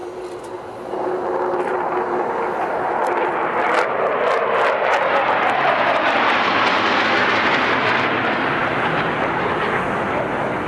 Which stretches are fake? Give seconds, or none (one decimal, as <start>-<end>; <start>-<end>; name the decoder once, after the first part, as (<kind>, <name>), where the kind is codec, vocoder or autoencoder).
none